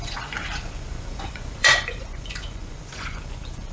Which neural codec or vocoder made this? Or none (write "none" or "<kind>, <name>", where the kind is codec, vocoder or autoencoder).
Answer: vocoder, Vocos